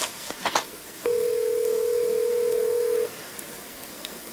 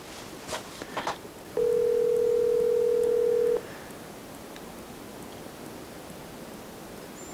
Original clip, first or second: second